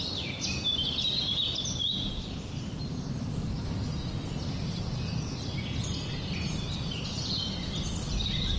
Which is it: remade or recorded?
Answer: recorded